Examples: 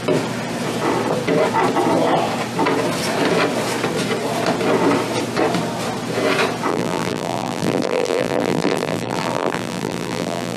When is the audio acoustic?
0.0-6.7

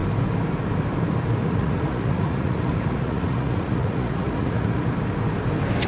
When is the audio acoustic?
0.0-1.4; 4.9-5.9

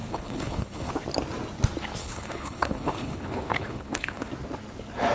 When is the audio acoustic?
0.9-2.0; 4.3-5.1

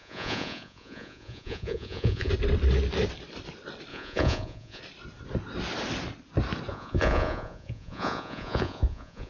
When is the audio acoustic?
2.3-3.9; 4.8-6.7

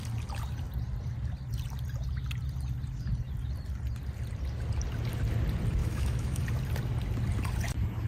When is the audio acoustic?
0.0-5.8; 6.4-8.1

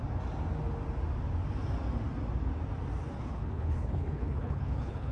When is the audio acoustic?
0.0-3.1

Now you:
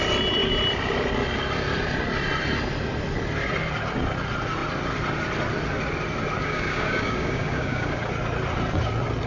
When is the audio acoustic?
0.0-6.4; 8.1-9.3

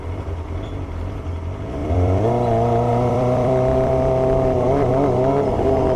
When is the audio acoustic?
0.0-1.8; 2.3-2.9; 4.9-6.0